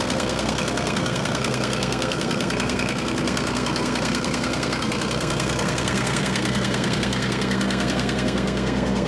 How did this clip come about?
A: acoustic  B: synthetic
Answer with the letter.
B